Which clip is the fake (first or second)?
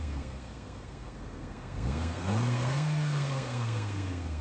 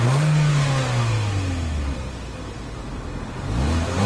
first